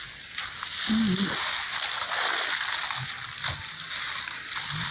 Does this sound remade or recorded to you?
recorded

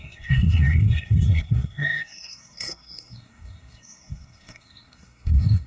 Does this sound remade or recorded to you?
remade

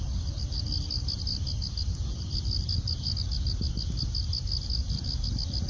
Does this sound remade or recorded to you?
recorded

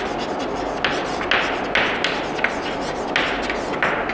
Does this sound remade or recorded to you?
recorded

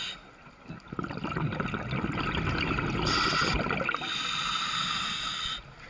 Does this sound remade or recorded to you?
recorded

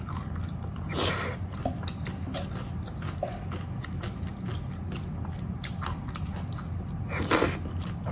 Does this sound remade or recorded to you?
recorded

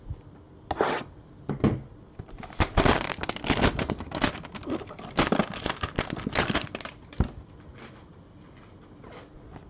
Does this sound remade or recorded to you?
recorded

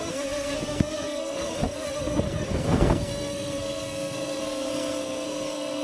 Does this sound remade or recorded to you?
remade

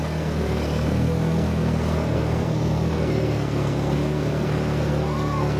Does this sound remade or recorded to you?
remade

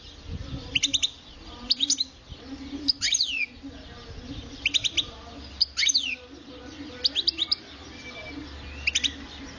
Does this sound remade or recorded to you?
recorded